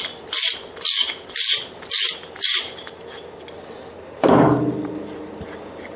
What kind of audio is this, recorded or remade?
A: recorded